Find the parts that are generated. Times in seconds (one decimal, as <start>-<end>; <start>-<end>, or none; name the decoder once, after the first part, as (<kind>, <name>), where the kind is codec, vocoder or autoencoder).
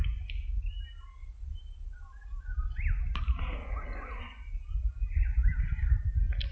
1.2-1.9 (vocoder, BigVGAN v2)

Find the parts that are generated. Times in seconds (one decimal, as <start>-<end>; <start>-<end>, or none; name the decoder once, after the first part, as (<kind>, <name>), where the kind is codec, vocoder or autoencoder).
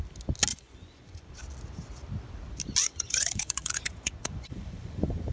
0.5-1.4 (vocoder, Vocos); 2.8-5.3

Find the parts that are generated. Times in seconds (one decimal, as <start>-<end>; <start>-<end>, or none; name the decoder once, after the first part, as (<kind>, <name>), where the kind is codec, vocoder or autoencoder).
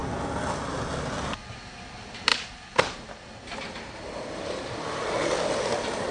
none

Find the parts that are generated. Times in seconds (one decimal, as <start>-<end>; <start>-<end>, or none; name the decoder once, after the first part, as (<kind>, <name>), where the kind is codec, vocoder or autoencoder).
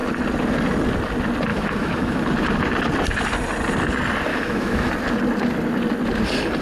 1.5-2.2 (autoencoder, DAC-VAE); 4.3-4.9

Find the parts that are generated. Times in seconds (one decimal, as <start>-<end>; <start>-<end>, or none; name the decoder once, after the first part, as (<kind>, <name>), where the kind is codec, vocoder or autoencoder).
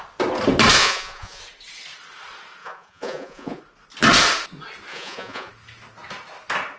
0.8-1.4 (vocoder, Vocos); 2.6-3.6; 4.9-5.5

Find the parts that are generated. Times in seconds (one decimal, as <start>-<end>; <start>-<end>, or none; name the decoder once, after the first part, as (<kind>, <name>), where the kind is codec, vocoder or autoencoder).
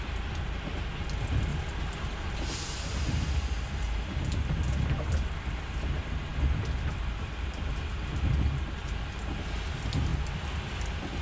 1.5-3.3 (vocoder, BigVGAN v2); 6.3-7.7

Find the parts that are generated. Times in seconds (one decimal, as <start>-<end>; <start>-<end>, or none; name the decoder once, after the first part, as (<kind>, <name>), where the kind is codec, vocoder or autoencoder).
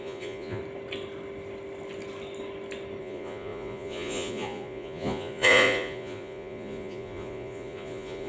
0.0-0.6 (vocoder, Vocos); 3.0-8.3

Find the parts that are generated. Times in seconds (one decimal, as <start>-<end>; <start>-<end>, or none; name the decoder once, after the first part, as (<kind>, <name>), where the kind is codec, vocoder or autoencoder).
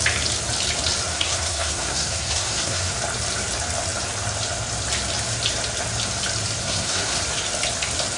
1.1-2.9 (codec, SNAC); 6.6-7.2